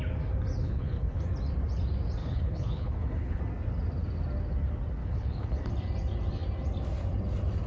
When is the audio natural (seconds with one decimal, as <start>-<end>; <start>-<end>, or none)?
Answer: 0.0-0.6; 1.2-2.2; 3.4-5.0; 5.7-7.7